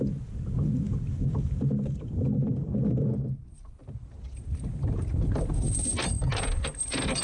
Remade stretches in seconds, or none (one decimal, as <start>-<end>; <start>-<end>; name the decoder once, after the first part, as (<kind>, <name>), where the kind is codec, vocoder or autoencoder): none